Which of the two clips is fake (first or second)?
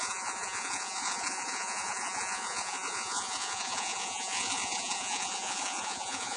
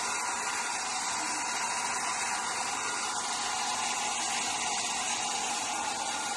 first